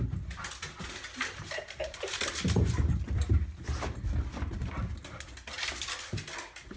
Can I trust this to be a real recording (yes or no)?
yes